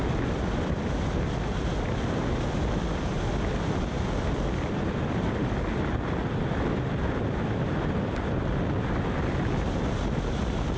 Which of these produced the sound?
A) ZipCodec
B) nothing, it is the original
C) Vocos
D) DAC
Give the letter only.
B